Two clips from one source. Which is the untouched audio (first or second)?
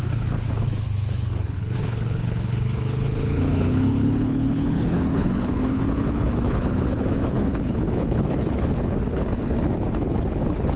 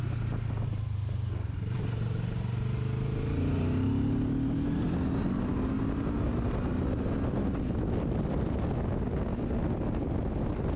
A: second